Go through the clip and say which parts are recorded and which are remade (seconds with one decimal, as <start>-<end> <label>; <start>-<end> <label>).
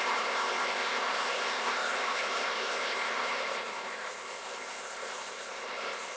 0.0-6.2 remade